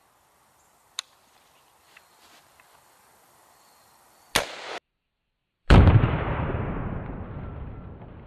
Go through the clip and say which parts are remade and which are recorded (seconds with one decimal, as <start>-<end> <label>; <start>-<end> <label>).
0.0-5.4 recorded; 5.4-6.7 remade; 6.7-8.3 recorded